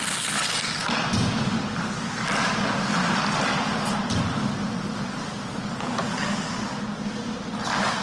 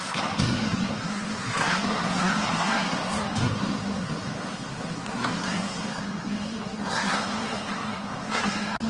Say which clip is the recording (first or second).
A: first